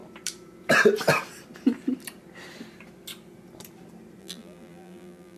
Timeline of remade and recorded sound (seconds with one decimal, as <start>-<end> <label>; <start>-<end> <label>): 0.0-4.2 recorded; 4.2-5.4 remade